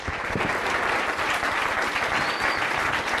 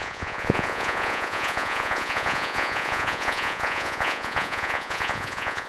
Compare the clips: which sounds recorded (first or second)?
first